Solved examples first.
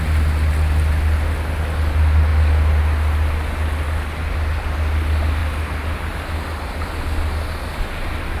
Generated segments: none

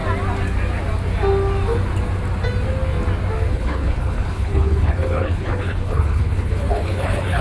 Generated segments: 3.5-7.4

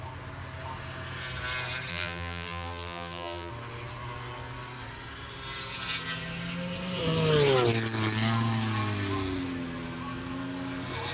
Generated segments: 1.9-3.5